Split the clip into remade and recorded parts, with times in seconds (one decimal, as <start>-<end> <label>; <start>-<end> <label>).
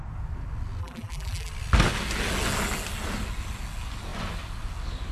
0.0-0.8 recorded; 0.8-1.5 remade; 1.5-5.1 recorded